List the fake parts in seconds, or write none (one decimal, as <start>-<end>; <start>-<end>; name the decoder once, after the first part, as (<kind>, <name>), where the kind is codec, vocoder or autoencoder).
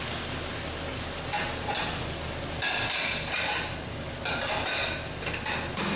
none